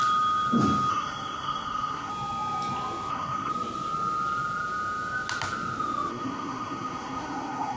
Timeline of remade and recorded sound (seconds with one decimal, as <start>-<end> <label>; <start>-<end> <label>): 0.0-0.9 recorded; 0.9-2.1 remade; 2.1-3.1 recorded; 3.1-3.5 remade; 3.5-6.1 recorded; 6.1-7.8 remade